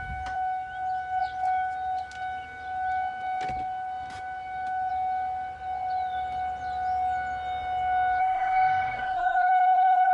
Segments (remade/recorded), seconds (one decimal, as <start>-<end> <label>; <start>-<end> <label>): 0.0-8.2 recorded; 8.2-10.1 remade